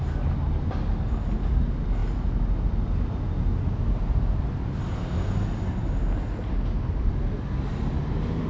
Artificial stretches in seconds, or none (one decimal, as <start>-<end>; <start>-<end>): none